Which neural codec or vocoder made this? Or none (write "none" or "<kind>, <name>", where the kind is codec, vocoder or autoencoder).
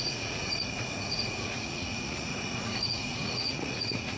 vocoder, Vocos